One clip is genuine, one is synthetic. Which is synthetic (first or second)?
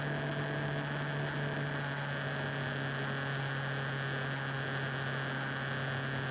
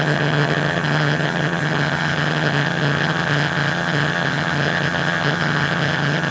second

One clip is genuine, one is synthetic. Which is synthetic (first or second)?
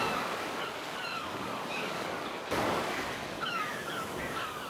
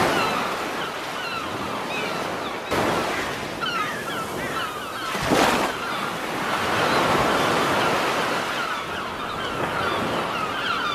first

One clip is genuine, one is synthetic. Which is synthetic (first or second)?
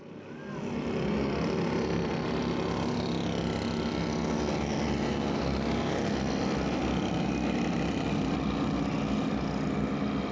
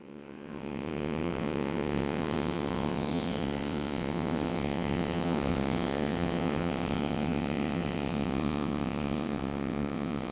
second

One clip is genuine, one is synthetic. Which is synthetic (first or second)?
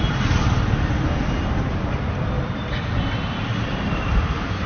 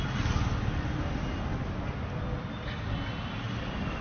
first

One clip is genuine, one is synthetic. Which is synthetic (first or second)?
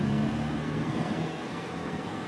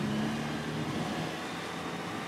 first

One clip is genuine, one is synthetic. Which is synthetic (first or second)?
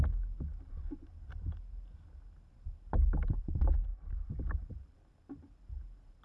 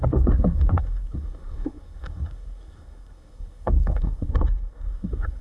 second